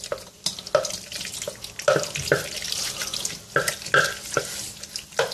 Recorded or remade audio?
recorded